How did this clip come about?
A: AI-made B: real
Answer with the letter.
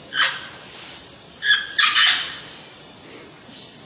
B